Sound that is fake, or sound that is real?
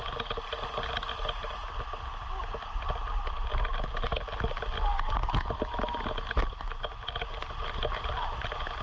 real